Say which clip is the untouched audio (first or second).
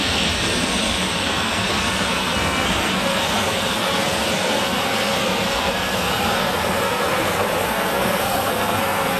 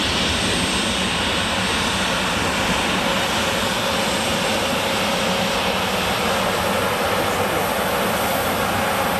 second